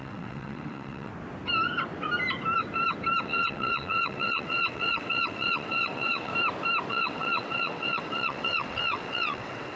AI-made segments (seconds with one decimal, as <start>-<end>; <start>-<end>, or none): 0.0-1.1; 3.2-6.3; 6.9-9.8